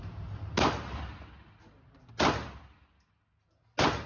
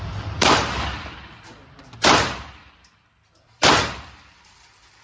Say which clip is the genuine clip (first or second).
first